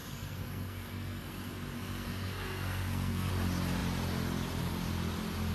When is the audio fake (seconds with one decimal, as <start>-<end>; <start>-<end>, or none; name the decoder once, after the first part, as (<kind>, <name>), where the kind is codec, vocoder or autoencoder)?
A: 0.0-3.3 (codec, SNAC)